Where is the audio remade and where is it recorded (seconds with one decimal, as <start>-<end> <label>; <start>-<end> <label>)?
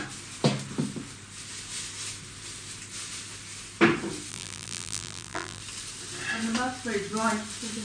0.0-4.3 recorded; 4.3-5.6 remade; 5.6-7.8 recorded